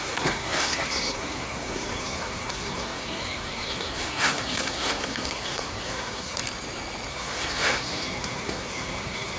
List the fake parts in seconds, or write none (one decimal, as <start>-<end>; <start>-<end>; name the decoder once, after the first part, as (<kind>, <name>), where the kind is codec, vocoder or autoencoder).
0.0-6.4 (codec, SNAC); 7.1-9.4